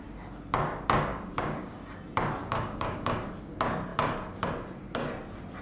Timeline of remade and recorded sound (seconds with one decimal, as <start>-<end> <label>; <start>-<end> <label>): 0.0-1.1 recorded; 1.1-1.8 remade; 1.8-2.4 recorded; 2.4-3.1 remade; 3.1-5.6 recorded